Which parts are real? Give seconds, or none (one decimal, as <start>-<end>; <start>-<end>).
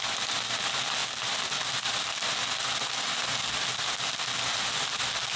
0.0-5.4